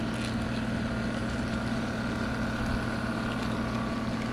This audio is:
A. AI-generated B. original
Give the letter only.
B